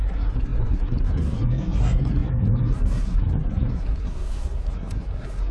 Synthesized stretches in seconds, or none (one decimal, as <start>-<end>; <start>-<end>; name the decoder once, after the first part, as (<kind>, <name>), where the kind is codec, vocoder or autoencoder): 0.0-5.5 (codec, SNAC)